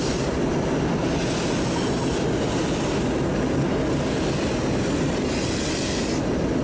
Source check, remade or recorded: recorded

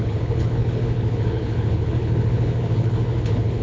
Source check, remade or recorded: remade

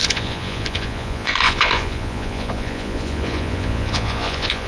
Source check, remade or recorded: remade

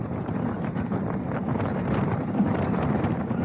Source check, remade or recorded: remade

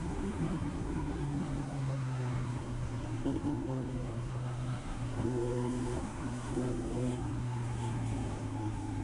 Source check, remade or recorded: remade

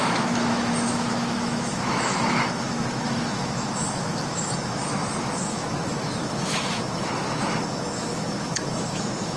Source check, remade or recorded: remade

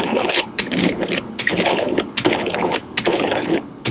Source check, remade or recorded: remade